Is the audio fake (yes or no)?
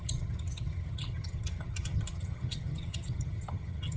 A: yes